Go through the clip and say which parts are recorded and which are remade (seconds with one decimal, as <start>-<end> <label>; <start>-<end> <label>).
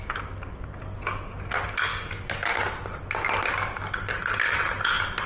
0.0-5.3 recorded